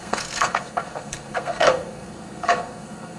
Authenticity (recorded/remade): remade